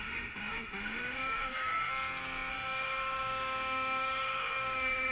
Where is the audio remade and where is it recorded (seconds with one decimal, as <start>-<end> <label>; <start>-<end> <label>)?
0.0-1.9 remade; 1.9-2.5 recorded; 2.5-5.1 remade